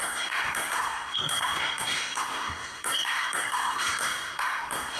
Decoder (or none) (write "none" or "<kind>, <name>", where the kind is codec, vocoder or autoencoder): codec, SNAC